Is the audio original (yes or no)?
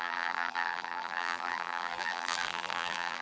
no